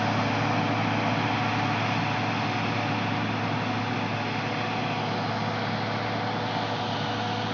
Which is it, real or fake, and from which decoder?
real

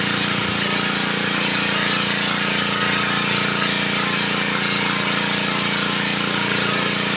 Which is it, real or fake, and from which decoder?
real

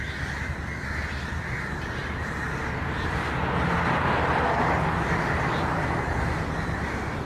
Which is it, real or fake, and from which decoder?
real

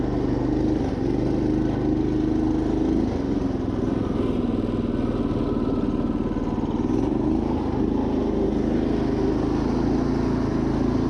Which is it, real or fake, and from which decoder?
real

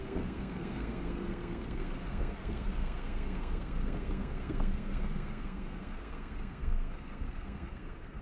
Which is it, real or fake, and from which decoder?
fake, codec, SNAC